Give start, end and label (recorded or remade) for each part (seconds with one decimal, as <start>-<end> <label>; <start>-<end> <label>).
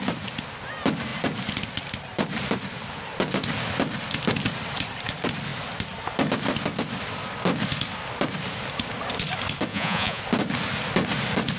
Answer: 0.0-9.7 recorded; 9.7-10.2 remade; 10.2-11.6 recorded